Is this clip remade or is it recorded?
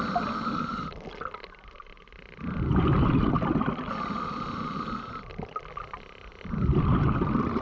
recorded